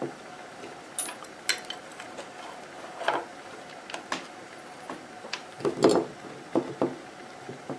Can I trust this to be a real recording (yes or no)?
yes